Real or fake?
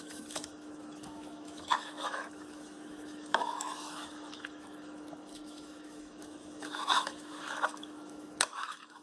fake